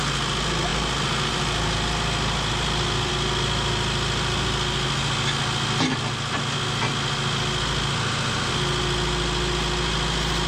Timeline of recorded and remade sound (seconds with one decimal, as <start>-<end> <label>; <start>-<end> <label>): 0.0-10.5 recorded